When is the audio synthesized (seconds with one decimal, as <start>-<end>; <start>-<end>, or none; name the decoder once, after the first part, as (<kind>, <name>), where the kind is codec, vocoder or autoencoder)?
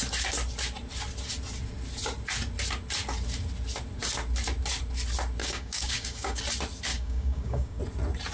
5.4-6.4 (codec, DAC); 6.9-7.8